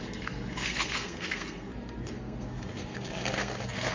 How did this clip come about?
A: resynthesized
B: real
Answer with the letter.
A